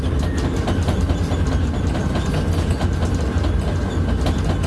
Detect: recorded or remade recorded